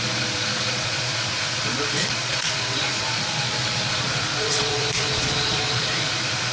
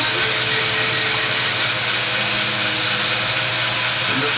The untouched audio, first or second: second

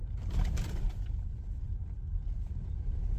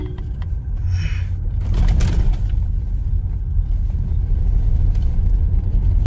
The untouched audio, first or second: second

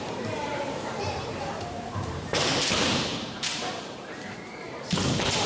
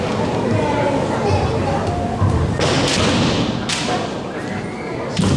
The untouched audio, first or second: second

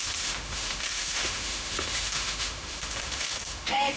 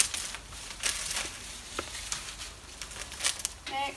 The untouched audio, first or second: second